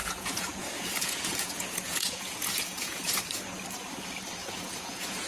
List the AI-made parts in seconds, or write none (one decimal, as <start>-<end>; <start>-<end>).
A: 0.0-3.2; 4.4-5.3